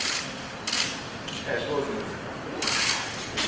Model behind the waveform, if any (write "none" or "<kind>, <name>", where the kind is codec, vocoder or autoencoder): none